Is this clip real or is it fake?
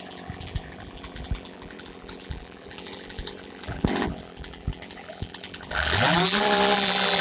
fake